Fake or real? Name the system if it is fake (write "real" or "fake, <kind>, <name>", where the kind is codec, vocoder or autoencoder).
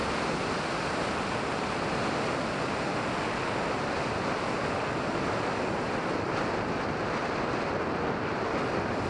real